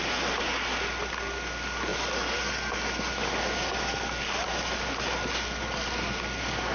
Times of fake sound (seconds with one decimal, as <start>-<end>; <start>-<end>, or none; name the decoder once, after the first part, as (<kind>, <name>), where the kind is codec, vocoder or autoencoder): none